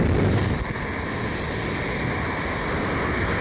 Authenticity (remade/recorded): recorded